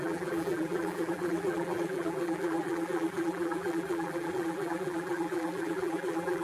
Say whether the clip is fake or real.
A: fake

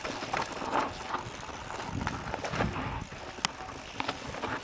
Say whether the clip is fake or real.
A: real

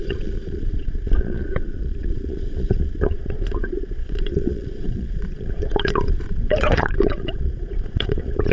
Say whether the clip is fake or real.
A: fake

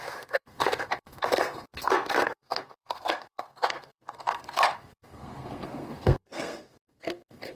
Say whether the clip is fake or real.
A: fake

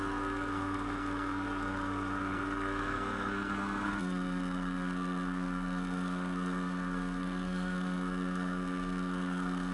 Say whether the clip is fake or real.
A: fake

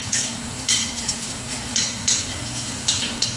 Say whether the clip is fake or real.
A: fake